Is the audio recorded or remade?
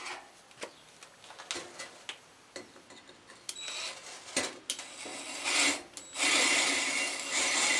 recorded